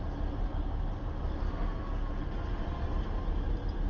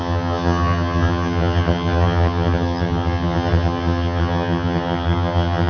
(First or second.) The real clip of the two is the first